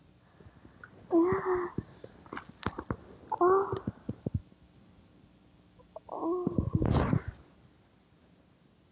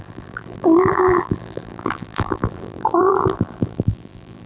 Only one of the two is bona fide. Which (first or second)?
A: first